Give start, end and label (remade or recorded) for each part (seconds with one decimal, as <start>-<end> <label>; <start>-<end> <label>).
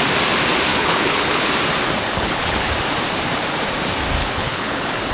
0.0-0.7 recorded; 0.7-1.5 remade; 1.5-2.1 recorded; 2.1-2.7 remade; 2.7-4.2 recorded; 4.2-5.1 remade